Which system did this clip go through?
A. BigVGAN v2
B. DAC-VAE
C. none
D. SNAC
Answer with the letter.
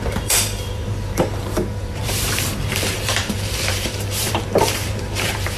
A